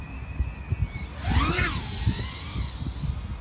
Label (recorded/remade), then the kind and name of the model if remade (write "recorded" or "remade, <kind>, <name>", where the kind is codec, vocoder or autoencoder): recorded